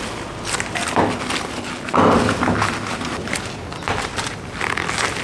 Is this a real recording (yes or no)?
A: yes